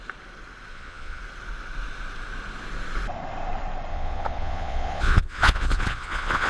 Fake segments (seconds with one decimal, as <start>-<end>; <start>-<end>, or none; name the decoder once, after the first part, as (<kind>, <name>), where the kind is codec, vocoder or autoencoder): 0.7-1.2 (vocoder, Vocos); 3.9-6.5

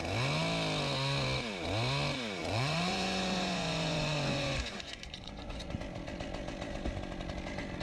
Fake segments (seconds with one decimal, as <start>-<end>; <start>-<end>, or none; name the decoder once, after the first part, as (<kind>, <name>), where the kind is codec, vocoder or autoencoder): 2.4-5.8 (vocoder, Vocos)

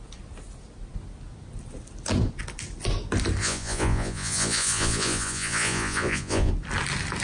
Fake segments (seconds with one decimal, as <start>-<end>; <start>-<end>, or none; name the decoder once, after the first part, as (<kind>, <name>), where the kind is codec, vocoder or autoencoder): 3.4-6.5 (vocoder, Vocos)

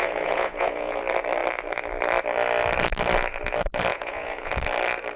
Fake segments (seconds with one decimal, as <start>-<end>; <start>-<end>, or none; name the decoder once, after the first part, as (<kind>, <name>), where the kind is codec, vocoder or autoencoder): 0.0-1.0 (vocoder, Vocos); 3.9-4.5

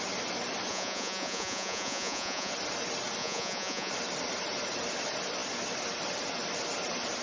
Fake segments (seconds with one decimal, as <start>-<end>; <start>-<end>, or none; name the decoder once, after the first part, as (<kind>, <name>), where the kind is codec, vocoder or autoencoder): 0.7-2.5 (vocoder, Vocos); 3.2-3.9

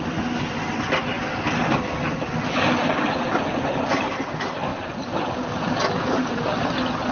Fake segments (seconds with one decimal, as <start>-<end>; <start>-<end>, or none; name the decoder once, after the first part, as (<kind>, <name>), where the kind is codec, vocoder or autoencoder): none